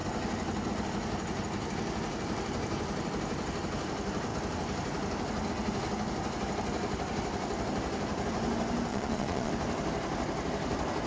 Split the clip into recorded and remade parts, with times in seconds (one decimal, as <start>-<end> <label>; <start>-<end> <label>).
0.0-8.9 recorded; 8.9-9.5 remade; 9.5-11.1 recorded